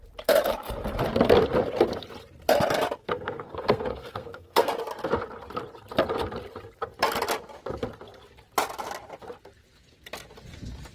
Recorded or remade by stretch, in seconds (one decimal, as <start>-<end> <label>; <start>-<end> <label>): 0.0-3.0 recorded; 3.0-4.7 remade; 4.7-10.9 recorded